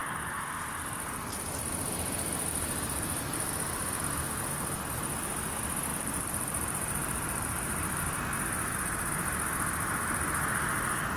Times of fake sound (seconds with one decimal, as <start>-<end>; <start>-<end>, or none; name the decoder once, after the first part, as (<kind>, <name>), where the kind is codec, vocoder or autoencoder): 2.5-4.0 (vocoder, BigVGAN v2); 5.9-8.0